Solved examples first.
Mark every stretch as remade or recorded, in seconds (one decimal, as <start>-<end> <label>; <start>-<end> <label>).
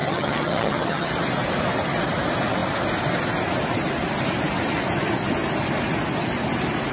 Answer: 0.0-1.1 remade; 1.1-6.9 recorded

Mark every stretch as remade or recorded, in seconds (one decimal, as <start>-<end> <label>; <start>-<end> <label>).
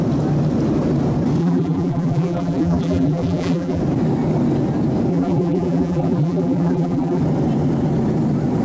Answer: 0.0-1.4 recorded; 1.4-3.8 remade; 3.8-5.1 recorded; 5.1-7.2 remade; 7.2-8.6 recorded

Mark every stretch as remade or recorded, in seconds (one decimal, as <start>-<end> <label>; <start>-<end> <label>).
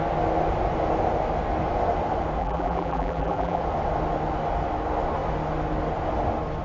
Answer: 0.0-2.4 recorded; 2.4-3.6 remade; 3.6-6.6 recorded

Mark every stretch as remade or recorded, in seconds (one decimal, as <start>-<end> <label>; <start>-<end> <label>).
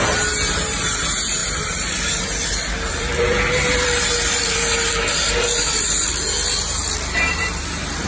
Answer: 0.0-1.4 recorded; 1.4-6.1 remade; 6.1-6.8 recorded; 6.8-7.6 remade; 7.6-8.1 recorded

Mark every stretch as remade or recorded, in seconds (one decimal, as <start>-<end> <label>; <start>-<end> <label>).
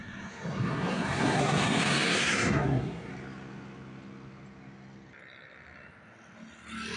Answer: 0.0-3.1 remade; 3.1-7.0 recorded